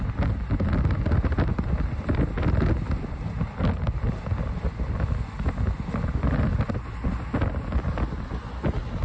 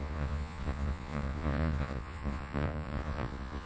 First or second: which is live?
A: first